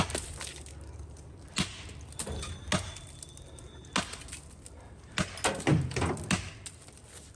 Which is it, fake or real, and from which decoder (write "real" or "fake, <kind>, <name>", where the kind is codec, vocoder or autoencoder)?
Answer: real